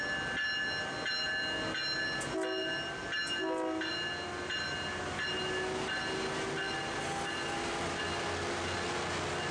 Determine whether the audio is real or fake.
real